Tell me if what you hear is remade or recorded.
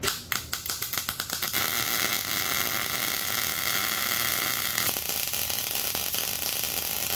recorded